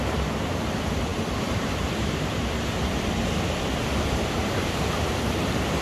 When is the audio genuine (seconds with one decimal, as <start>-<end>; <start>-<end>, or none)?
none